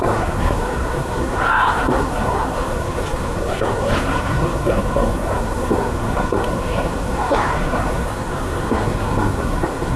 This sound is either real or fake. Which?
fake